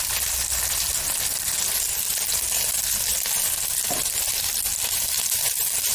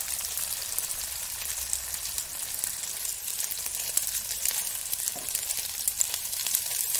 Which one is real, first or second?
first